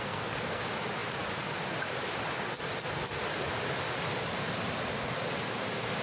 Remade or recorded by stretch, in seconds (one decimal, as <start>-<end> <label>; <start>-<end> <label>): 0.0-0.6 remade; 0.6-6.0 recorded